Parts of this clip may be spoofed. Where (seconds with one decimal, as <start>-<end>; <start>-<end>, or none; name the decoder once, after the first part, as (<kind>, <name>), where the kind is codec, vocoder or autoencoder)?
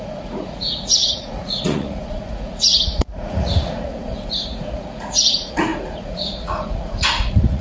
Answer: 0.0-7.6 (vocoder, Vocos)